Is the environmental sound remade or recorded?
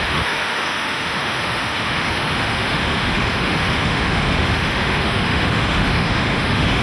remade